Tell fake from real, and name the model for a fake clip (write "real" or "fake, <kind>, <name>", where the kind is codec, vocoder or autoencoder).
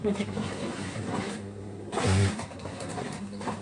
fake, codec, SNAC